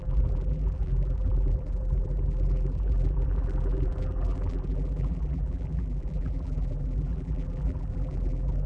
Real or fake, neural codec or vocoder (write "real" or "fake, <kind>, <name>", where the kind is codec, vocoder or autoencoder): fake, vocoder, BigVGAN v2